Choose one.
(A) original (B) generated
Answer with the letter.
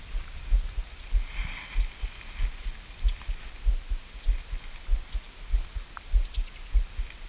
A